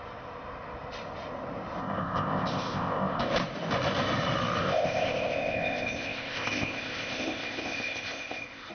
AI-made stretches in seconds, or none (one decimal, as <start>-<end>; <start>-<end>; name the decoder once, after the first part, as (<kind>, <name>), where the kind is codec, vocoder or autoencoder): 1.8-3.3 (codec, ZipCodec); 4.6-8.7